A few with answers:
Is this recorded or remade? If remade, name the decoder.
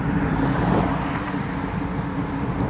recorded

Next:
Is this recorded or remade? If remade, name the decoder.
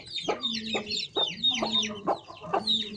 recorded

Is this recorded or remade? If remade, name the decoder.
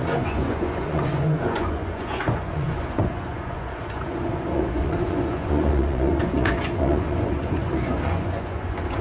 remade, vocoder, Vocos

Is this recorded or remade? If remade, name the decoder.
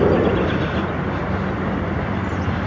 recorded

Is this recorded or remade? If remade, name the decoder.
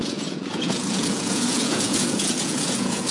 remade, vocoder, Vocos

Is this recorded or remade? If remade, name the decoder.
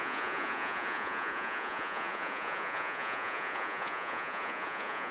remade, vocoder, Vocos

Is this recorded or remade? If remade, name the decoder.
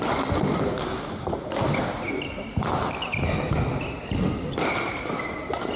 recorded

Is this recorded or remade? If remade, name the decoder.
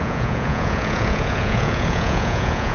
remade, vocoder, Vocos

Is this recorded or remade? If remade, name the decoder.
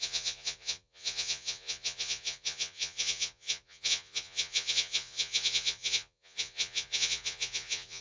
remade, vocoder, Vocos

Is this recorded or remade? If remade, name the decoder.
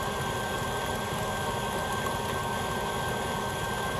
recorded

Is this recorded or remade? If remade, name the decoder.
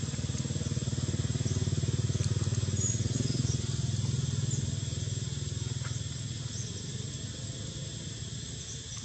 recorded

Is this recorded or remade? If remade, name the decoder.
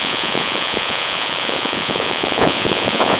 remade, vocoder, Vocos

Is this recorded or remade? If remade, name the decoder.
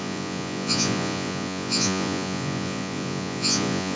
remade, vocoder, Vocos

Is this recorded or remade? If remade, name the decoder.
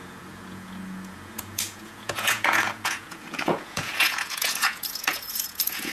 remade, vocoder, Vocos